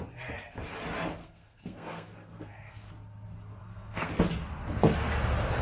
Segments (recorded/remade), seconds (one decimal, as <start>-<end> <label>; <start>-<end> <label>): 0.0-1.2 recorded; 1.2-2.9 remade; 2.9-3.6 recorded; 3.6-4.1 remade; 4.1-5.6 recorded